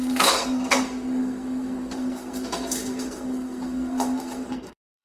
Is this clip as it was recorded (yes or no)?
no